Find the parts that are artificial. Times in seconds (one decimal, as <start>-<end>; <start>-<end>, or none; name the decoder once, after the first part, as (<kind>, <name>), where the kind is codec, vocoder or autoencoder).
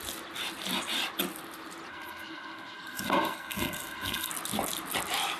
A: 1.9-4.3 (codec, SNAC)